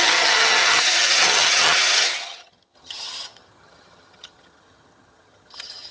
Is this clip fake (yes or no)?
yes